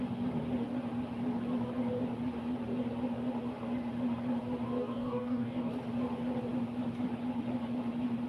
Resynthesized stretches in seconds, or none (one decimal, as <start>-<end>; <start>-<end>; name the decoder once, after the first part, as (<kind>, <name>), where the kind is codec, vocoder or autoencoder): 4.8-5.7 (codec, DAC)